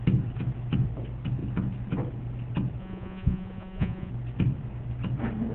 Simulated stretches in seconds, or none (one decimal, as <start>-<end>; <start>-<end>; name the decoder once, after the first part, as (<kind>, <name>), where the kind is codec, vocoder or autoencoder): 2.8-4.1 (vocoder, Vocos)